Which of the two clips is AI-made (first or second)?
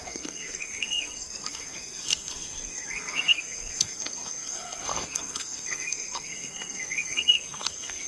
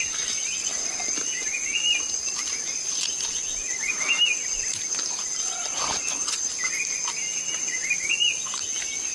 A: first